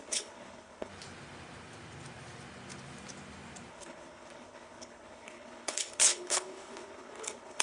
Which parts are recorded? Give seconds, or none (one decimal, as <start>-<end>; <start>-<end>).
0.9-3.7